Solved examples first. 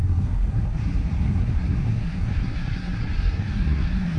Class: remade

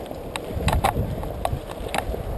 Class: recorded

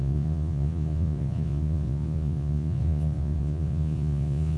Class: remade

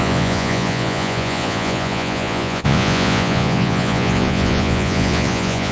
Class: remade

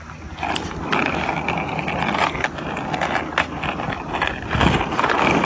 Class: recorded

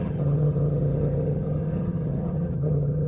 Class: remade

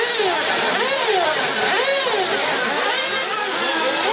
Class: recorded